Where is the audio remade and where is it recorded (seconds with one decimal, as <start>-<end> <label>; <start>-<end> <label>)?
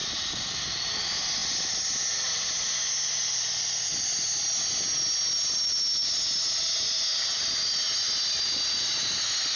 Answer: 0.0-9.6 recorded